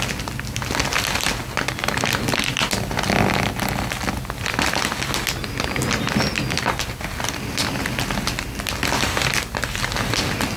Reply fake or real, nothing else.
real